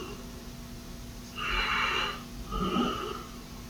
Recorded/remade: recorded